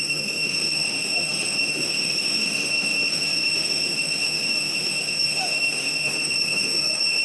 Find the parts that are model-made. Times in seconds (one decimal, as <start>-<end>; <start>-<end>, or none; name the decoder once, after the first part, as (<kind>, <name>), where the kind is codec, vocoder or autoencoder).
0.0-7.2 (autoencoder, DAC-VAE)